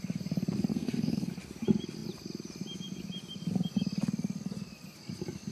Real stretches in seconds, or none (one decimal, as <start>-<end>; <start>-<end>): 0.0-0.7; 1.3-5.5